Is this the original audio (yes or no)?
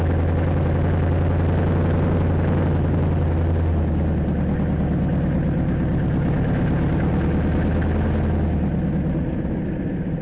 yes